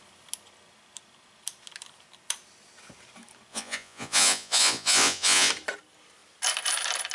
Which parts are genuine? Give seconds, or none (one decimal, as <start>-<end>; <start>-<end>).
0.0-3.5; 5.5-7.1